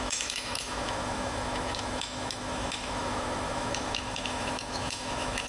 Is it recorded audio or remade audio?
remade